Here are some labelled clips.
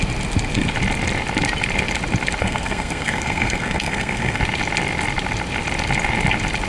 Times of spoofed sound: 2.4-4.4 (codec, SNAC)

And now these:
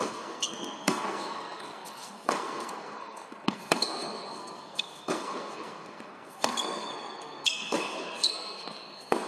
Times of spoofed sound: 0.0-9.3 (codec, SNAC)

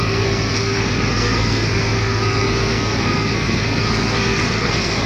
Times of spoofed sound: 0.0-5.1 (codec, SNAC)

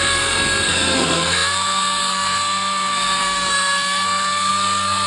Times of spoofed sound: 0.0-5.1 (codec, SNAC)

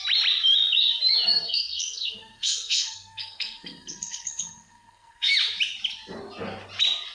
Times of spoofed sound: 1.3-5.3 (codec, SNAC)